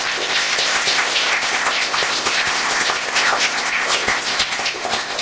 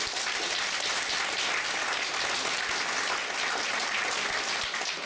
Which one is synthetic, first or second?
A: first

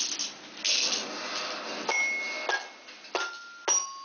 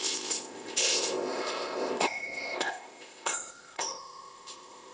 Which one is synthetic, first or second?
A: second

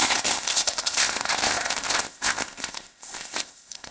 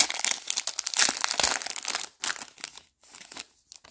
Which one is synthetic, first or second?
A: first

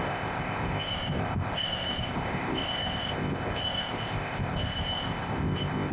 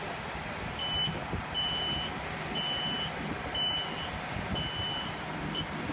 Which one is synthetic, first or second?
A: first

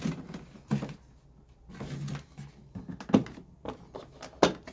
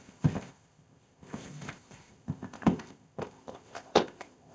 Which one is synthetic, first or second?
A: second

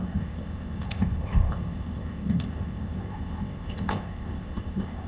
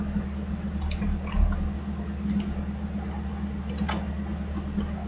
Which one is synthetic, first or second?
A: first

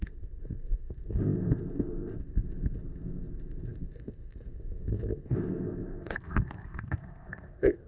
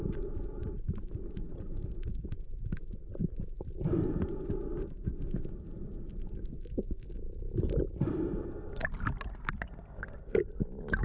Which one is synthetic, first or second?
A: first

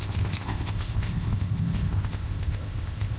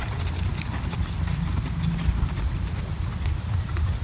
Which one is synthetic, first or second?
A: first